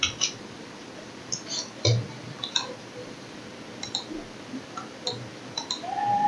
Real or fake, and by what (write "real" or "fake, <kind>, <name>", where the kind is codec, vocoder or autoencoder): real